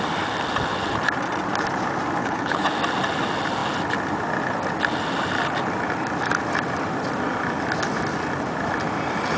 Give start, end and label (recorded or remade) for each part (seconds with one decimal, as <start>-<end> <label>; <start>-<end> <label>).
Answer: 0.0-2.2 recorded; 2.2-2.7 remade; 2.7-9.4 recorded

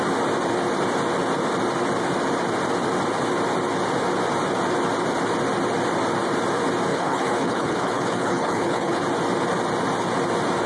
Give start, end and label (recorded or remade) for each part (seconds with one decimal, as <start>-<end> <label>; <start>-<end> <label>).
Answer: 0.0-6.9 recorded; 6.9-9.0 remade; 9.0-10.7 recorded

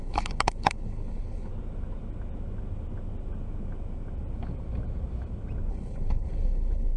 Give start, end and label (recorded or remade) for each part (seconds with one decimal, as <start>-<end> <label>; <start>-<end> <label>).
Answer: 0.0-1.5 remade; 1.5-5.7 recorded; 5.7-7.0 remade

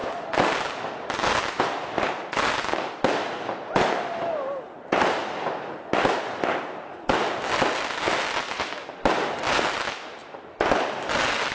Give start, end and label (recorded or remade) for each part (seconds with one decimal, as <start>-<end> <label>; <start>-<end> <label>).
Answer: 0.0-11.5 recorded